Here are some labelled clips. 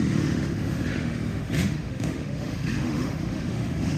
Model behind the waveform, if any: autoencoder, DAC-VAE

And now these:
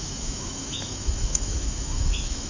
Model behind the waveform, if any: autoencoder, DAC-VAE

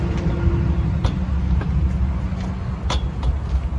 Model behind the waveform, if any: none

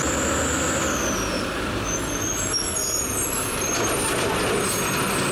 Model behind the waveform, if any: none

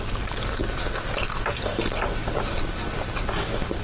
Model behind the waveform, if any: none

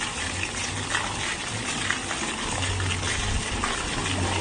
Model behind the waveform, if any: none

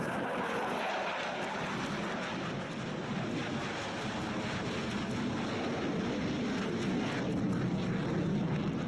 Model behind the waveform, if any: none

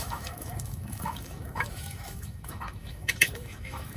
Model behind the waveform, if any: autoencoder, DAC-VAE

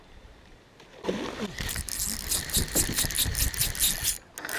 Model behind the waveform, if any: none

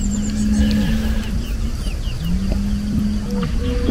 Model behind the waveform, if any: none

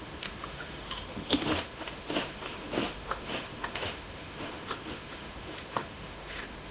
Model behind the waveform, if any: autoencoder, DAC-VAE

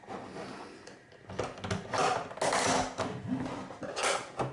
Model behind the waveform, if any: none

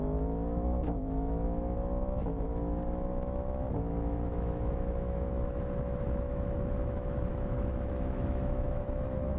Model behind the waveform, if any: autoencoder, DAC-VAE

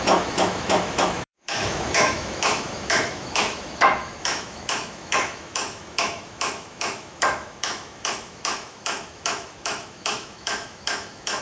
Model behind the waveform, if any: autoencoder, DAC-VAE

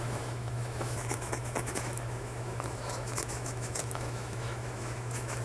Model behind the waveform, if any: autoencoder, DAC-VAE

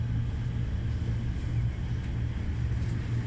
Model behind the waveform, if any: none